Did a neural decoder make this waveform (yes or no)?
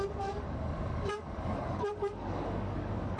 yes